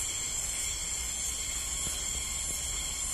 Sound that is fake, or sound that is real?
real